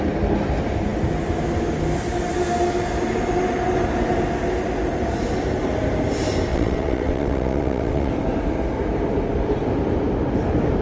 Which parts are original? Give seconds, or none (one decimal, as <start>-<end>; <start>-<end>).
0.0-6.5; 8.1-10.8